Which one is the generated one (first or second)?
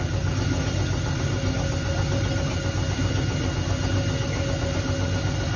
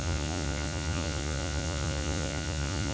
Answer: second